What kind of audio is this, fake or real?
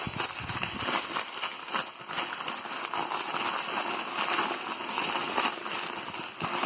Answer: real